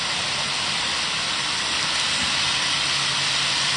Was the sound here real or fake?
real